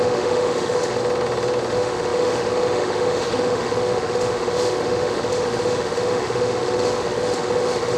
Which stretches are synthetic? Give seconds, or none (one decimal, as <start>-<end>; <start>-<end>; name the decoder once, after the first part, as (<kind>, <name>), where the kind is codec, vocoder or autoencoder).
0.0-1.0 (autoencoder, DAC-VAE); 1.7-8.0

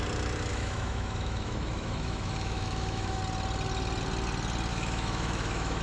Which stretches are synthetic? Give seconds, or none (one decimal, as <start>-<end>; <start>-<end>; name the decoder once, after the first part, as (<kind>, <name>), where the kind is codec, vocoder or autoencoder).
0.5-3.2 (autoencoder, DAC-VAE); 4.7-5.8

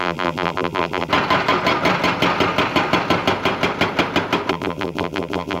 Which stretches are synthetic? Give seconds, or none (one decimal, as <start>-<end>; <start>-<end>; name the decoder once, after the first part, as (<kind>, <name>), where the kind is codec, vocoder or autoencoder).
0.0-1.1 (vocoder, BigVGAN v2); 4.5-5.6

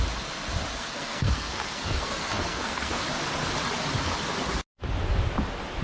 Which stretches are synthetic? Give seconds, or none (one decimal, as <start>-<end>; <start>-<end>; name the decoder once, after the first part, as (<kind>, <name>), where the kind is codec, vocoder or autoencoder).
0.7-3.0 (codec, SNAC)